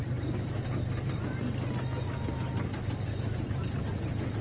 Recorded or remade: recorded